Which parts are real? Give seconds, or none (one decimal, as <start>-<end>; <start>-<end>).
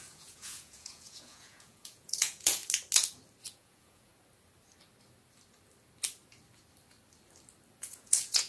2.6-3.5; 4.1-7.8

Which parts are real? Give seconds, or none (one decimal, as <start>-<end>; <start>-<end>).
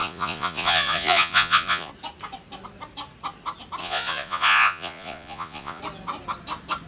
1.9-3.8; 5.8-6.9